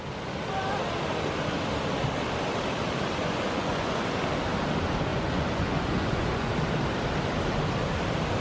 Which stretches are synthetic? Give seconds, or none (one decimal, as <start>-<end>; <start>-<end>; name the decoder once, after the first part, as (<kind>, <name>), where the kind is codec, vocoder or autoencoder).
3.2-4.0 (vocoder, Vocos); 5.1-6.5